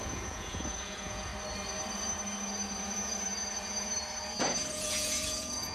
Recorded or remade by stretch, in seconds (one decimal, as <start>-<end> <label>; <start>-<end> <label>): 0.0-1.3 remade; 1.3-4.7 recorded; 4.7-5.7 remade